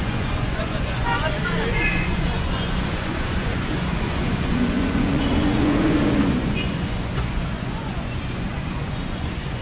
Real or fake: fake